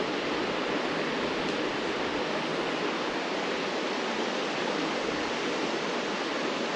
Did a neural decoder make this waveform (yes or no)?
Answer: no